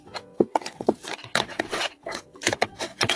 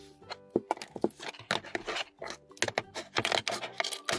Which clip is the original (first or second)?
second